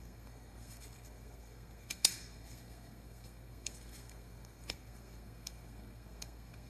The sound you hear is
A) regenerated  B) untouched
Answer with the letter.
A